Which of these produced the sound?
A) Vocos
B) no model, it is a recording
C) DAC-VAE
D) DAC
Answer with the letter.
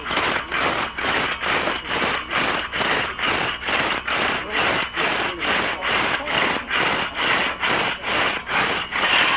B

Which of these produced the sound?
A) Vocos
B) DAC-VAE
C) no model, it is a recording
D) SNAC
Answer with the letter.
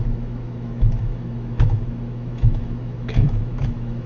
B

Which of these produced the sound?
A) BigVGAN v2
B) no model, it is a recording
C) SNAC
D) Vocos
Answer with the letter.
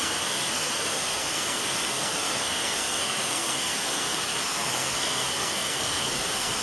C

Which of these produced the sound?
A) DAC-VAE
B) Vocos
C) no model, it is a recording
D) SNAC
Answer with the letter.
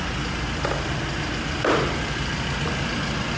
C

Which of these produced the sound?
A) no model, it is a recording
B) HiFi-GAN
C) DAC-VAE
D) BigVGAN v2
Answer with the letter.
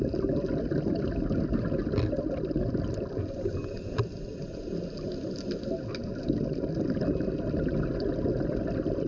A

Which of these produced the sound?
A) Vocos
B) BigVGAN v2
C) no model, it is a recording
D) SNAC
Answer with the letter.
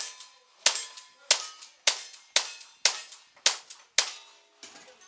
C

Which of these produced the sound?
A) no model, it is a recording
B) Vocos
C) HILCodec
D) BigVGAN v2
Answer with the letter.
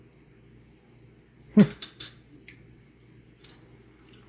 A